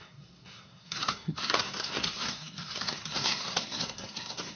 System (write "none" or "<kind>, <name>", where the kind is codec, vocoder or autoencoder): codec, SNAC